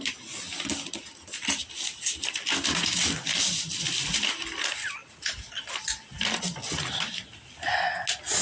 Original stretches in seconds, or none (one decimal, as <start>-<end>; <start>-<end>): 0.0-8.4